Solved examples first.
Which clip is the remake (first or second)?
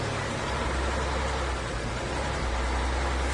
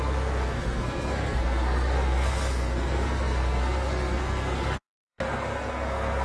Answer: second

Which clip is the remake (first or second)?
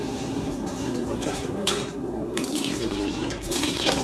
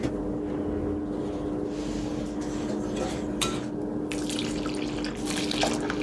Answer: first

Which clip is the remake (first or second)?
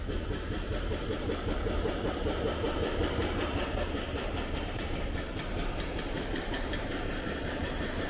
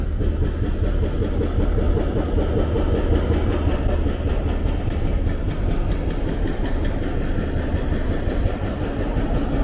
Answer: first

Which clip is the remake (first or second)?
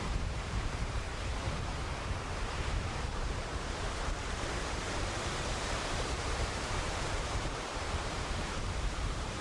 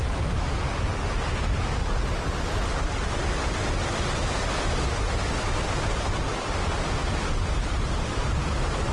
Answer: first